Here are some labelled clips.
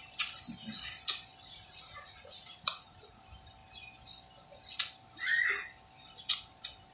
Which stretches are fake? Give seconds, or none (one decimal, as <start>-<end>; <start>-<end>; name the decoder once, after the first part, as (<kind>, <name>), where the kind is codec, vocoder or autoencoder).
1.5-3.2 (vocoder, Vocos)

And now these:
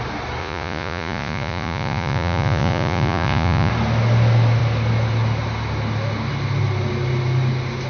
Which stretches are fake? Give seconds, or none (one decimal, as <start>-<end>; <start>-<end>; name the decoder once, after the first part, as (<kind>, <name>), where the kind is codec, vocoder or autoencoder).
0.4-3.7 (vocoder, Vocos)

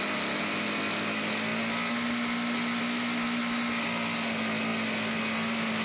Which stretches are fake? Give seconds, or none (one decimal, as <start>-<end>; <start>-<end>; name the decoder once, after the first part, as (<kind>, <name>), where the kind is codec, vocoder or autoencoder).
none

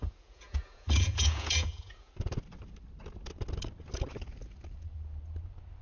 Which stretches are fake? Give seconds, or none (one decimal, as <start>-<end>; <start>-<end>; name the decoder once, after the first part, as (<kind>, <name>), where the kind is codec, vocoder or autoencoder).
0.0-2.1 (vocoder, Vocos)

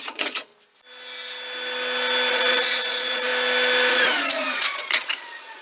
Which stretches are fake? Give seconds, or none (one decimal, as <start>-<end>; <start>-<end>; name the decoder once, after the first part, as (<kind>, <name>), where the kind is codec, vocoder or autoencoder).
0.0-0.5 (vocoder, Vocos); 2.3-3.3; 3.9-5.6

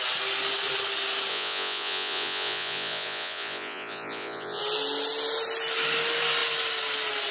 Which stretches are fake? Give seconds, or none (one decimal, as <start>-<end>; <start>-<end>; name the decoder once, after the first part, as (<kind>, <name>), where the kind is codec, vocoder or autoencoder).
1.3-4.6 (vocoder, Vocos)